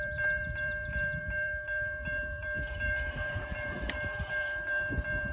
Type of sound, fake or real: fake